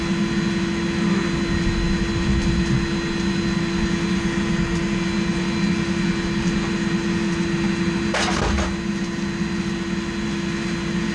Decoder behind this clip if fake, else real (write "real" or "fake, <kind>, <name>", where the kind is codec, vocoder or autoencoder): real